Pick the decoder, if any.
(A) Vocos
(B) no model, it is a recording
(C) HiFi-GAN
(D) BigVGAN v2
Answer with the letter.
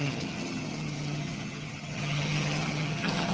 C